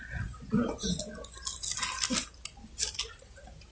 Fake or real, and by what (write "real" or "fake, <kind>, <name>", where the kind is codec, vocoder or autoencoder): real